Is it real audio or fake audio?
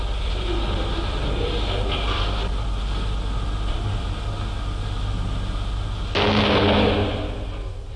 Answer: real